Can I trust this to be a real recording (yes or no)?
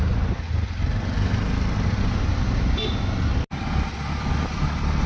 yes